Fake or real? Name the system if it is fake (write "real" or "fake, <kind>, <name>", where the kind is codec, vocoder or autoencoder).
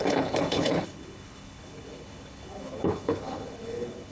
fake, codec, HILCodec